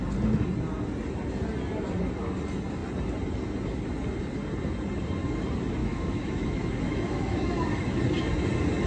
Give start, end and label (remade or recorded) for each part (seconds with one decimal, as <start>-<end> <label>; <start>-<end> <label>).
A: 0.0-5.8 recorded; 5.8-8.0 remade; 8.0-8.9 recorded